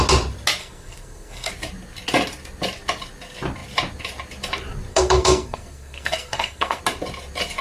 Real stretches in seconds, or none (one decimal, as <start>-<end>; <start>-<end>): 0.0-0.6; 1.5-4.9; 6.8-7.6